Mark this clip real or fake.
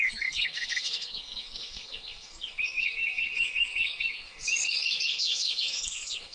fake